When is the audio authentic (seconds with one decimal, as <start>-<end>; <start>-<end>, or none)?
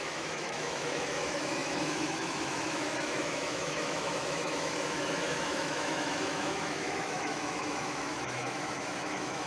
none